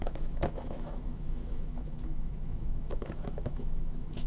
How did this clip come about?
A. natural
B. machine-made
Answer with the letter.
B